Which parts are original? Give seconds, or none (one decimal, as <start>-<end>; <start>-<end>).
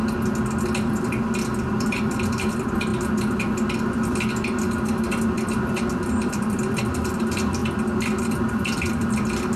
0.0-1.7; 2.9-5.6; 7.6-8.2